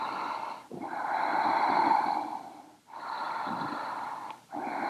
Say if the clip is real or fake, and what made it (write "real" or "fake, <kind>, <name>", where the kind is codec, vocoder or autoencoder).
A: fake, vocoder, BigVGAN v2